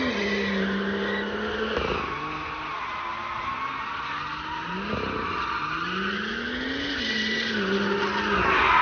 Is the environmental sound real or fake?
real